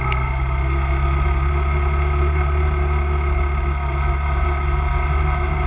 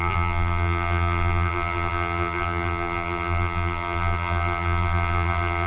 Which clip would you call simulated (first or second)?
second